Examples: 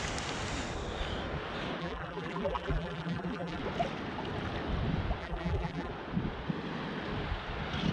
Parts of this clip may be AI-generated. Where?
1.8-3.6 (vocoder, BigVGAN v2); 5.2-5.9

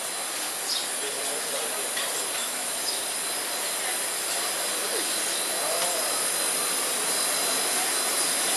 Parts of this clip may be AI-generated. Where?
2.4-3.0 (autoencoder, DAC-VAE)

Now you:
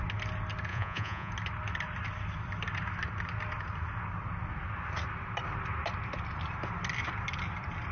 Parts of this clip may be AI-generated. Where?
0.7-1.3 (vocoder, Vocos)